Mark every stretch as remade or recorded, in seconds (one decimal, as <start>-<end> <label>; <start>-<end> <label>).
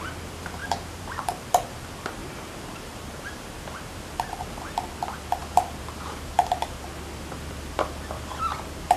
0.0-0.6 recorded; 0.6-1.5 remade; 1.5-2.2 recorded; 2.2-4.4 remade; 4.4-5.4 recorded; 5.4-6.3 remade; 6.3-9.0 recorded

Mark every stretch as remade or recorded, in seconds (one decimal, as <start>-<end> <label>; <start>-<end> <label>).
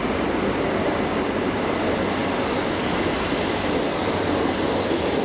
0.0-2.2 remade; 2.2-3.9 recorded; 3.9-5.2 remade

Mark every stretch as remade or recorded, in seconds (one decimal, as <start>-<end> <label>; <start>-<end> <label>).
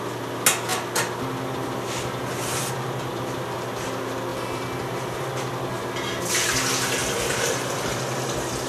0.0-4.3 recorded; 4.3-5.3 remade; 5.3-7.0 recorded; 7.0-8.0 remade; 8.0-8.7 recorded